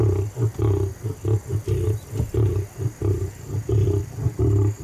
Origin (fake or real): real